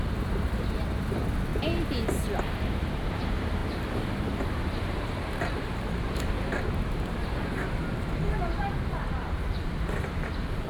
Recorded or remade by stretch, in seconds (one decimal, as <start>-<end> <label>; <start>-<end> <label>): 0.0-1.5 remade; 1.5-2.4 recorded; 2.4-10.7 remade